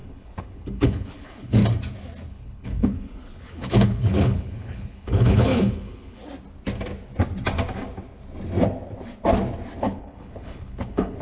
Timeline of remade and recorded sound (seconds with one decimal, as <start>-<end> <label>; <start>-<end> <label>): 0.0-1.6 remade; 1.6-2.3 recorded; 2.3-6.2 remade; 6.2-9.8 recorded; 9.8-11.2 remade

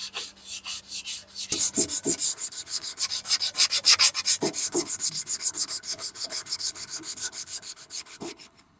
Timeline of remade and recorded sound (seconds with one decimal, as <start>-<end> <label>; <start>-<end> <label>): 0.0-2.3 recorded; 2.3-3.0 remade; 3.0-4.6 recorded; 4.6-8.8 remade

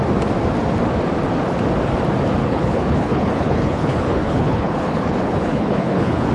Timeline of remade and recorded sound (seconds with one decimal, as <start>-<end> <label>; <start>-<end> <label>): 0.0-2.4 recorded; 2.4-6.3 remade

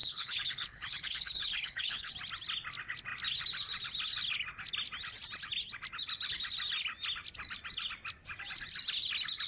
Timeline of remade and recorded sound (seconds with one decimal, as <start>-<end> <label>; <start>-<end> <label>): 0.0-2.1 remade; 2.1-9.5 recorded

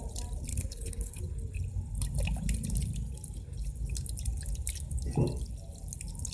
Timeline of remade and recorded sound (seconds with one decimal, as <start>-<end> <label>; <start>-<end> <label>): 0.0-0.5 recorded; 0.5-1.2 remade; 1.2-6.3 recorded

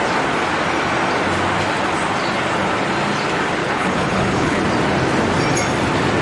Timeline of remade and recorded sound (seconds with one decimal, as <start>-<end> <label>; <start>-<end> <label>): 0.0-3.6 recorded; 3.6-4.6 remade; 4.6-6.2 recorded